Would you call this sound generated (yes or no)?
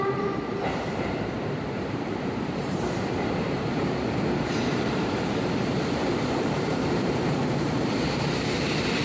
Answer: yes